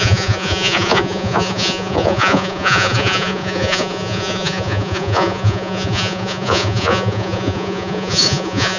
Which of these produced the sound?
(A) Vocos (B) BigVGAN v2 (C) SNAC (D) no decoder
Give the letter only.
A